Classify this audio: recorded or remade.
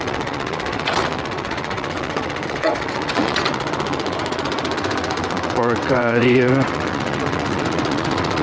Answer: remade